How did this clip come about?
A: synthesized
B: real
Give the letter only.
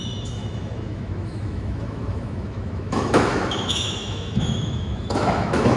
A